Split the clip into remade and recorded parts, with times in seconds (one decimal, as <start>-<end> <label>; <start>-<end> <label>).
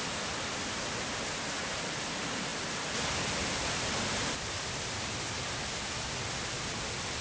0.0-7.2 recorded